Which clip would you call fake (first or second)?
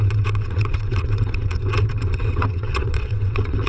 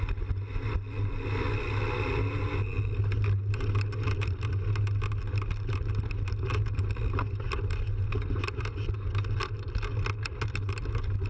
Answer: first